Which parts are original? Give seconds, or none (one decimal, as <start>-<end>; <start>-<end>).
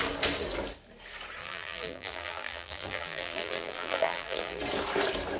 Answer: 0.0-1.4; 4.6-5.4